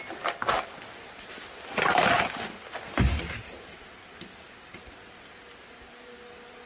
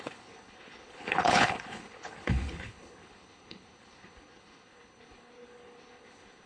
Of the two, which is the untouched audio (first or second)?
first